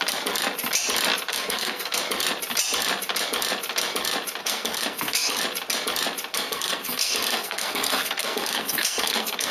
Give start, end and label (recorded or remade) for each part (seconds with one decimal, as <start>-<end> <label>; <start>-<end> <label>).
0.0-1.3 recorded; 1.3-2.0 remade; 2.0-4.4 recorded; 4.4-5.4 remade; 5.4-6.3 recorded; 6.3-9.5 remade